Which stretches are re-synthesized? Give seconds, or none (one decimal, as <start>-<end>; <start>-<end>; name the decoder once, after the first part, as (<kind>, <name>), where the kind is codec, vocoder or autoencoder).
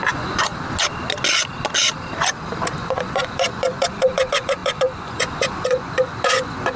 0.0-0.5 (vocoder, Vocos); 2.8-6.8